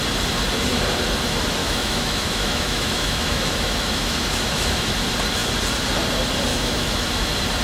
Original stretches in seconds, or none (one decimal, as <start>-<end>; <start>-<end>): 0.0-1.6; 4.9-6.5; 7.1-7.6